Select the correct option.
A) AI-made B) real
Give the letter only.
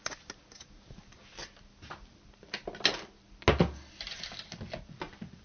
B